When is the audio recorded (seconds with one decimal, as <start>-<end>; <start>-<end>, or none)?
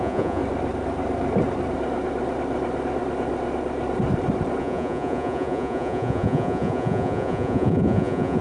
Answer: 0.4-4.6